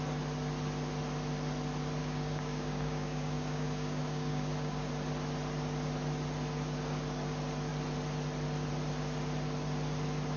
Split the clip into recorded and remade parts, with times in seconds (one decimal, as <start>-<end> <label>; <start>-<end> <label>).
0.0-2.0 recorded; 2.0-4.9 remade; 4.9-10.4 recorded